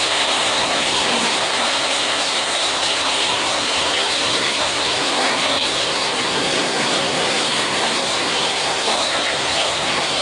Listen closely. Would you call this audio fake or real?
fake